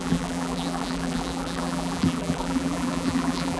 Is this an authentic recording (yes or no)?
no